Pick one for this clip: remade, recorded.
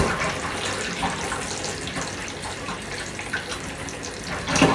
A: recorded